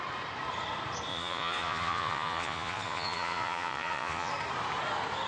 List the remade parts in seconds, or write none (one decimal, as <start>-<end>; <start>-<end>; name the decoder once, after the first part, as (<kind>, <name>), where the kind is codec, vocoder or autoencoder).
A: 1.1-4.3 (vocoder, Vocos)